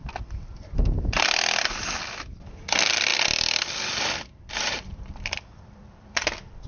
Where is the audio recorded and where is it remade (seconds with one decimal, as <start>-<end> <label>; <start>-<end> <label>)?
0.0-6.7 remade

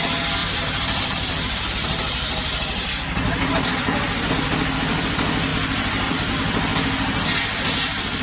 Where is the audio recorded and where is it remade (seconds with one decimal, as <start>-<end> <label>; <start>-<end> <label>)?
0.0-0.4 recorded; 0.4-4.3 remade; 4.3-8.2 recorded

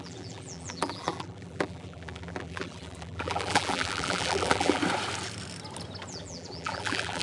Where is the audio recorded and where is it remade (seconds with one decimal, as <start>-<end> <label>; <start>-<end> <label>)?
0.0-4.8 remade; 4.8-6.1 recorded; 6.1-7.2 remade

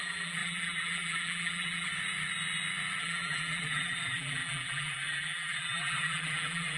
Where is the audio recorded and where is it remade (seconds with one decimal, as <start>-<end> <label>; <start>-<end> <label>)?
0.0-1.9 remade; 1.9-3.0 recorded; 3.0-6.8 remade

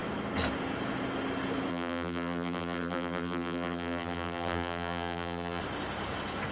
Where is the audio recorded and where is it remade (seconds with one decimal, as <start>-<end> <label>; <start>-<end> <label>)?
0.0-1.7 recorded; 1.7-5.6 remade; 5.6-6.5 recorded

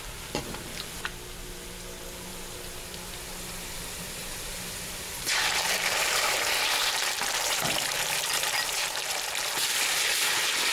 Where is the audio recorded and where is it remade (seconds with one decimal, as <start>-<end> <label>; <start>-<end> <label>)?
0.0-4.2 recorded; 4.2-9.5 remade; 9.5-10.7 recorded

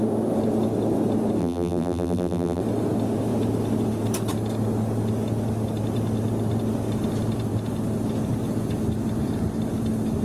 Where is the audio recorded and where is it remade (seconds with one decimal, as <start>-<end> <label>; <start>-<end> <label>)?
0.0-1.4 recorded; 1.4-2.6 remade; 2.6-10.2 recorded